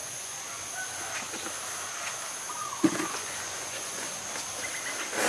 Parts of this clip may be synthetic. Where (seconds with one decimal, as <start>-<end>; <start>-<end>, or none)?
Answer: 0.0-0.7; 2.6-4.2